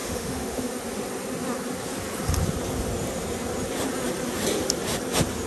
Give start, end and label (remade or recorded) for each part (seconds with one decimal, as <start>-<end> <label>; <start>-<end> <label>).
0.0-0.7 remade; 0.7-5.5 recorded